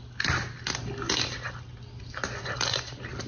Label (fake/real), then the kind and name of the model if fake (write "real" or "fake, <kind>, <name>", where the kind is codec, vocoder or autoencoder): real